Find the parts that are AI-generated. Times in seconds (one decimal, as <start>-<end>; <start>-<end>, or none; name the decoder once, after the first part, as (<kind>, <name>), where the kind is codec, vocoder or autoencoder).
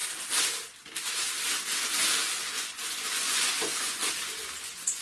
2.3-4.0 (vocoder, Vocos); 4.6-5.0